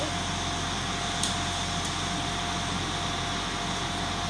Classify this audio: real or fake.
real